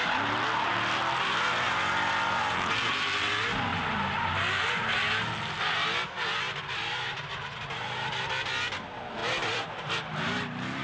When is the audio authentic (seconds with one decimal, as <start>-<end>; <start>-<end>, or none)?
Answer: 0.0-3.7; 4.5-9.2; 10.3-10.8